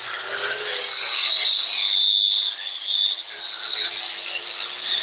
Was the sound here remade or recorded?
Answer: recorded